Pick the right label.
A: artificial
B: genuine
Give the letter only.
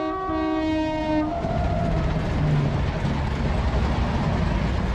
B